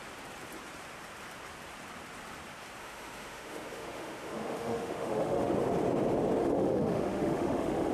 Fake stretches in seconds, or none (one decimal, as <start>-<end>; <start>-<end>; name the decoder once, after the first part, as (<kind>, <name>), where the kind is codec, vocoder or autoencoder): 2.8-5.5 (autoencoder, DAC-VAE); 6.4-7.9